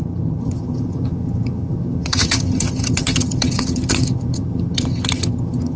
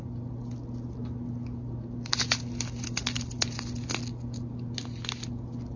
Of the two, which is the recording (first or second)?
second